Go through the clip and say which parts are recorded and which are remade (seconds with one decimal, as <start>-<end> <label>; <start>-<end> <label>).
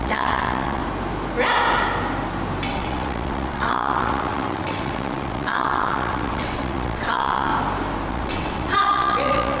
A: 0.0-0.8 remade; 0.8-2.7 recorded; 2.7-7.5 remade; 7.5-8.1 recorded; 8.1-9.6 remade